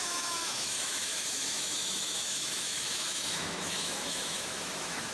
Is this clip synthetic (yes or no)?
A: yes